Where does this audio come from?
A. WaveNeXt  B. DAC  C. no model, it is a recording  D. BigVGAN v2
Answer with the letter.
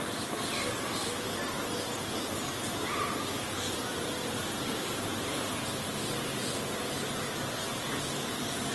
C